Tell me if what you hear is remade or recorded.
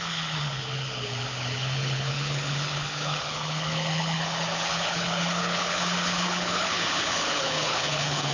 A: remade